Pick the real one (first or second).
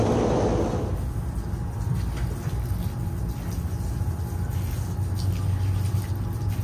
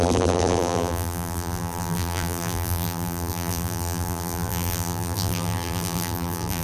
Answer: first